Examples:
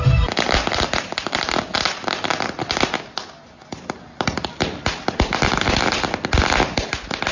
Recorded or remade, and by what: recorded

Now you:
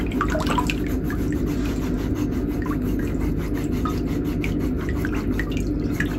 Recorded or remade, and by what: recorded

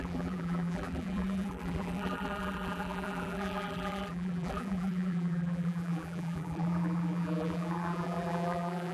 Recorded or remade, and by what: remade, vocoder, BigVGAN v2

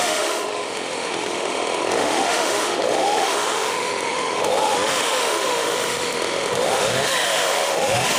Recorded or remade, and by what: remade, autoencoder, DAC-VAE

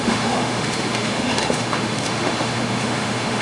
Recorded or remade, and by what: remade, autoencoder, DAC-VAE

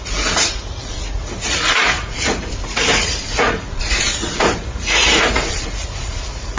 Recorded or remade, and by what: remade, vocoder, Vocos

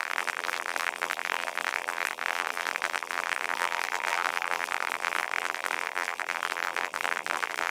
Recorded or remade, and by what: remade, vocoder, BigVGAN v2